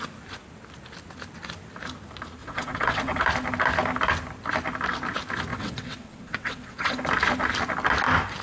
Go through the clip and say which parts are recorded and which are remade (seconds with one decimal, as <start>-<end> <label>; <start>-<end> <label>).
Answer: 0.0-2.4 recorded; 2.4-3.2 remade; 3.2-5.5 recorded; 5.5-7.0 remade; 7.0-8.4 recorded